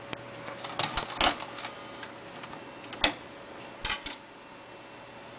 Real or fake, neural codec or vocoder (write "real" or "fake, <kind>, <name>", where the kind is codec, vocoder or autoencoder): real